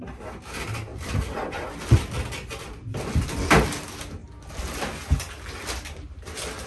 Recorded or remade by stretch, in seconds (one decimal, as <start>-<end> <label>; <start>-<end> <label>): 0.0-0.9 recorded; 0.9-1.5 remade; 1.5-6.7 recorded